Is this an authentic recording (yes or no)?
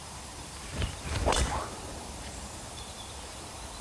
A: no